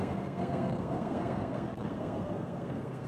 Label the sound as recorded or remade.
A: remade